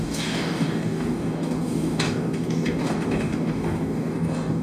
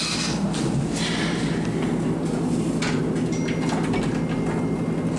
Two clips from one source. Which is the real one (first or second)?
second